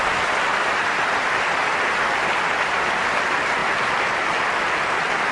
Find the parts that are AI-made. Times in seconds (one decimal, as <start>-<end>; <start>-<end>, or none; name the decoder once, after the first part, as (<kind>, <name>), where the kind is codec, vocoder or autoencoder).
0.5-2.7 (vocoder, BigVGAN v2); 3.6-4.5